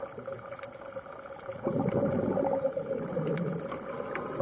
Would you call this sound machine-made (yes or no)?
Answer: no